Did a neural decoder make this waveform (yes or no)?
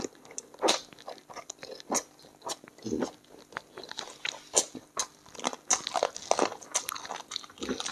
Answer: no